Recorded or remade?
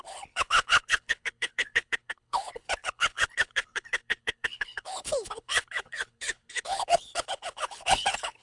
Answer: remade